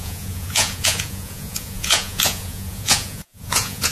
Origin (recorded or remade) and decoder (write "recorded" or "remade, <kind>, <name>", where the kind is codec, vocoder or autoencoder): remade, vocoder, Vocos